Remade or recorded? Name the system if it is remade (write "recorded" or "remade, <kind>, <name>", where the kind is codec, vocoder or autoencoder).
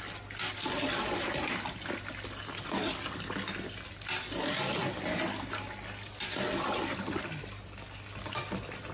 recorded